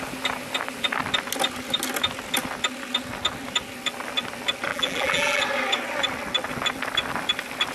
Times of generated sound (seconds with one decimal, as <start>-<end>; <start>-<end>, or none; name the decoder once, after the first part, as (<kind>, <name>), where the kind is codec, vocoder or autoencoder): 4.7-5.4 (vocoder, BigVGAN v2)